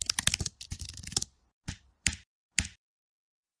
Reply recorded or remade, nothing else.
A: recorded